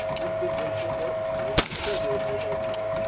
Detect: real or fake real